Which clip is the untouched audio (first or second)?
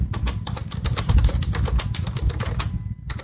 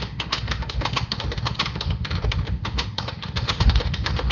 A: first